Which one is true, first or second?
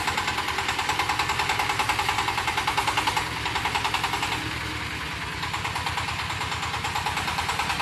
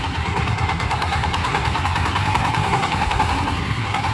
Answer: first